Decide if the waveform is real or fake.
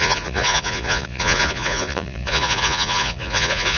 fake